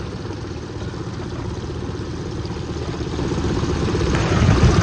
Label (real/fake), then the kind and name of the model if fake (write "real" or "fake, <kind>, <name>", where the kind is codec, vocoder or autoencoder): real